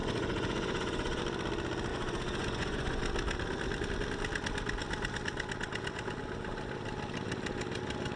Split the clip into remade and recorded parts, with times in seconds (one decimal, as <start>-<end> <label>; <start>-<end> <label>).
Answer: 0.0-1.2 remade; 1.2-1.9 recorded; 1.9-3.0 remade; 3.0-8.2 recorded